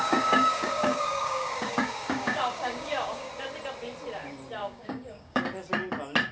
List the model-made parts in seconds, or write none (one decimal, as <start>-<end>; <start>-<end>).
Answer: 0.0-3.3; 4.6-5.4